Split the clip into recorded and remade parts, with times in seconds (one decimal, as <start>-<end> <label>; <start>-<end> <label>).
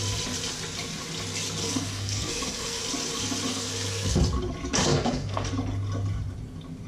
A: 0.0-1.6 recorded; 1.6-2.8 remade; 2.8-3.5 recorded; 3.5-4.2 remade; 4.2-4.8 recorded; 4.8-5.5 remade; 5.5-6.9 recorded